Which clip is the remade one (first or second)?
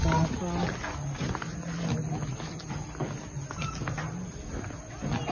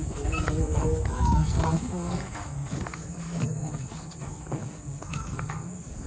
second